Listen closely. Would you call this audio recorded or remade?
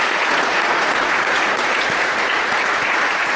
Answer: remade